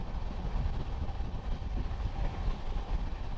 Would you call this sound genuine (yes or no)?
yes